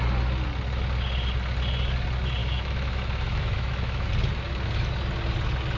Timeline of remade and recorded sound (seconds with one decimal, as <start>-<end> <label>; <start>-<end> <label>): 0.0-2.4 recorded; 2.4-4.1 remade; 4.1-5.8 recorded